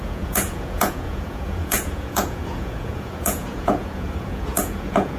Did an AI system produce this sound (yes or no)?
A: yes